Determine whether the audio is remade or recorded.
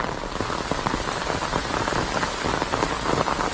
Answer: recorded